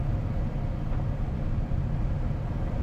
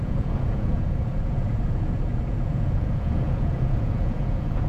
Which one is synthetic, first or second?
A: second